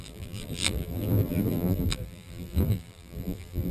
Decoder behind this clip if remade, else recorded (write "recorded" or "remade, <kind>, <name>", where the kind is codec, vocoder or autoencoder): remade, vocoder, BigVGAN v2